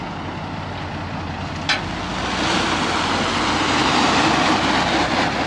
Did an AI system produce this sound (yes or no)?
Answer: no